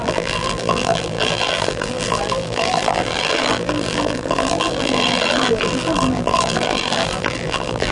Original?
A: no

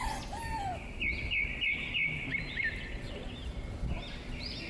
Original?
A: yes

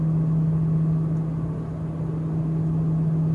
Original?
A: yes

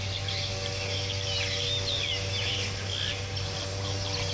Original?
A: yes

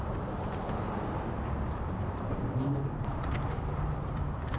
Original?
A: no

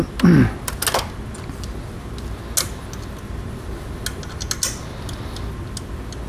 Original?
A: yes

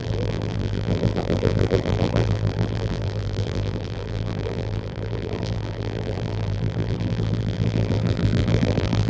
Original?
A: no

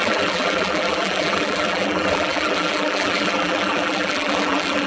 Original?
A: no